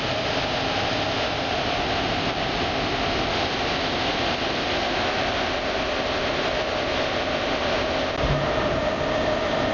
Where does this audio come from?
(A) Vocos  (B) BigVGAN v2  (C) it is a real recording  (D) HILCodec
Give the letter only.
C